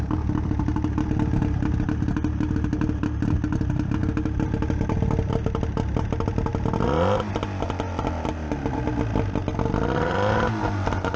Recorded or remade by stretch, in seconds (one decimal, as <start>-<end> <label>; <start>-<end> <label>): 0.0-11.2 recorded

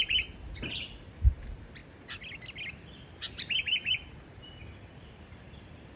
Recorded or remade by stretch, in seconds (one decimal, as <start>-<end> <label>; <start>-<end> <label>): 0.0-1.8 remade; 1.8-5.0 recorded; 5.0-6.0 remade